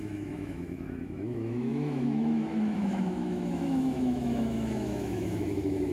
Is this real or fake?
fake